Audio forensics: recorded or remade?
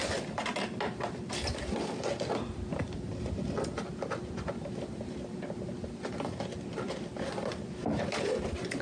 remade